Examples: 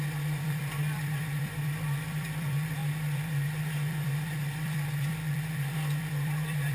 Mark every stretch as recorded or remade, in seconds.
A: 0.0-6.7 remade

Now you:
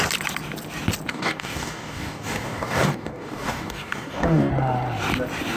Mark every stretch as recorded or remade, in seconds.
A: 0.0-1.1 recorded; 1.1-4.5 remade; 4.5-5.6 recorded